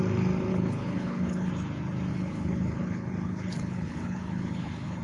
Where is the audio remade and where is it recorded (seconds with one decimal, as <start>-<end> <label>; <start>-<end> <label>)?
0.0-0.5 recorded; 0.5-1.5 remade; 1.5-2.1 recorded; 2.1-5.0 remade